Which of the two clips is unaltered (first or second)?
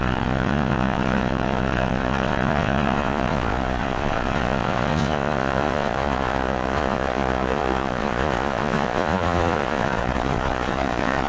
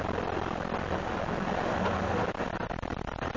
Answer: second